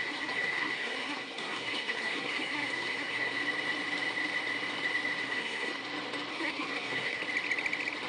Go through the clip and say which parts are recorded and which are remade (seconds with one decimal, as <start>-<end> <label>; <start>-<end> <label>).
0.0-3.4 remade; 3.4-5.2 recorded; 5.2-5.8 remade; 5.8-6.3 recorded; 6.3-7.2 remade; 7.2-8.1 recorded

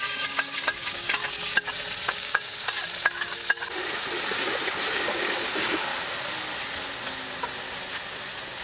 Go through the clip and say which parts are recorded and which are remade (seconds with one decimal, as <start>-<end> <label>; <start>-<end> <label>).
0.0-1.2 remade; 1.2-2.1 recorded; 2.1-2.8 remade; 2.8-4.9 recorded; 4.9-5.9 remade; 5.9-8.6 recorded

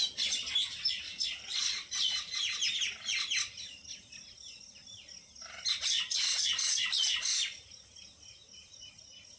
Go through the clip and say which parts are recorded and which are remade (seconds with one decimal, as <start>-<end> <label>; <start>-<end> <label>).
0.0-9.4 recorded

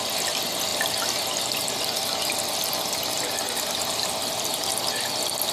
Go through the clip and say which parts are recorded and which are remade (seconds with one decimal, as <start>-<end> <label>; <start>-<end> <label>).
0.0-5.5 recorded

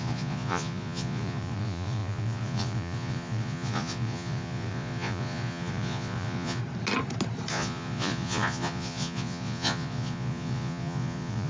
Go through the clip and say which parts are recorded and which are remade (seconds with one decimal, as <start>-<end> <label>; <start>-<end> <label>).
0.0-6.6 remade; 6.6-7.5 recorded; 7.5-11.5 remade

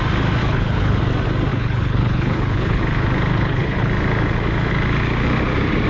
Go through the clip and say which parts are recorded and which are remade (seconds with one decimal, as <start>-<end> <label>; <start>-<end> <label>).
0.0-0.4 recorded; 0.4-1.0 remade; 1.0-1.5 recorded; 1.5-2.8 remade; 2.8-3.3 recorded; 3.3-3.9 remade; 3.9-5.9 recorded

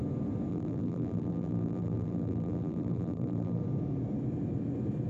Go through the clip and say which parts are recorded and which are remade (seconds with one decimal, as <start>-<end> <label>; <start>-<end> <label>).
0.0-0.5 recorded; 0.5-3.6 remade; 3.6-5.1 recorded

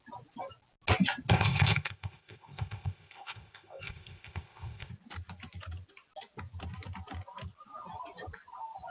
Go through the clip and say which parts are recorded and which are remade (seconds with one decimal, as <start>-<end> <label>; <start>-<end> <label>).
0.0-1.3 recorded; 1.3-4.9 remade; 4.9-8.9 recorded